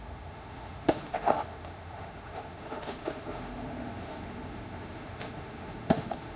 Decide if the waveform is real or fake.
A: fake